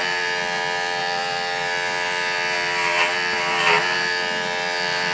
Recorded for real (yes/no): no